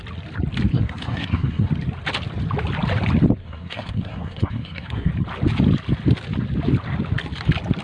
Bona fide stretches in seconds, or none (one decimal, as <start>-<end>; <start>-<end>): 0.0-0.7; 1.7-3.4; 5.1-7.8